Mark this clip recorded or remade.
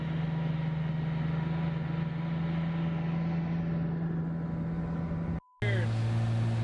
recorded